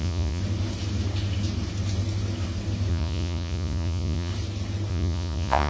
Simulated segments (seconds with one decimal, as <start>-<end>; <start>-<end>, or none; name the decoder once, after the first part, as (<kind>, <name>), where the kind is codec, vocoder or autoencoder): 0.0-0.4 (vocoder, Vocos); 2.9-4.3; 4.9-5.7